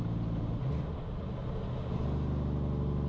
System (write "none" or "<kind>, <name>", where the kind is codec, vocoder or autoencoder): none